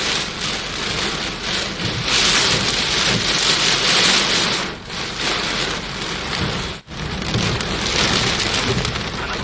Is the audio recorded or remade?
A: recorded